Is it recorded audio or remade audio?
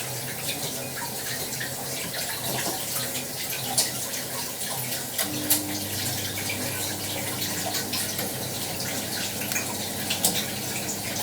recorded